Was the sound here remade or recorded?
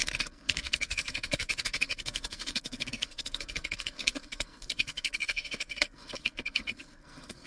remade